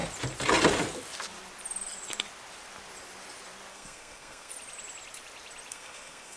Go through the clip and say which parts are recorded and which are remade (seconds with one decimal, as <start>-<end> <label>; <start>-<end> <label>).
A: 0.0-3.7 recorded; 3.7-4.5 remade; 4.5-5.7 recorded; 5.7-6.4 remade